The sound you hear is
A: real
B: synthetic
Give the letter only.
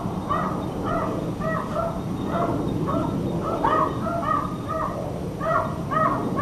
A